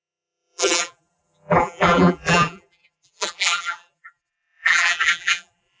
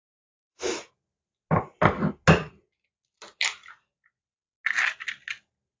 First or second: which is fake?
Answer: first